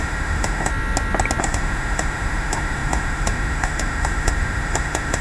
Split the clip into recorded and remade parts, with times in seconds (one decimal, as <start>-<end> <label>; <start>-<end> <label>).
0.0-0.7 remade; 0.7-1.4 recorded; 1.4-5.2 remade